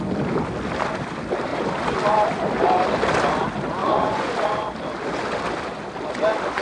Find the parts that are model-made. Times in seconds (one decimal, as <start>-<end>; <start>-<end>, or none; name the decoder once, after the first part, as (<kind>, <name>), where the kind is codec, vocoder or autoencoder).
3.8-4.3 (vocoder, Vocos)